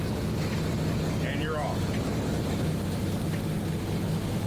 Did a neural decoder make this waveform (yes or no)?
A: no